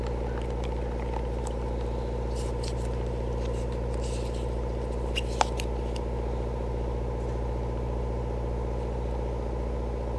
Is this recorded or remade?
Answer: recorded